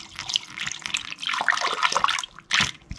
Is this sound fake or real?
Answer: real